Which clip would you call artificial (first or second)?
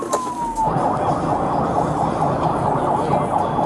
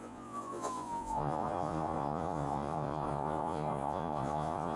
second